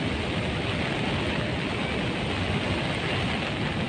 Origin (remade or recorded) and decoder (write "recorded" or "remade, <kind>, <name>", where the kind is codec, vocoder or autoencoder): recorded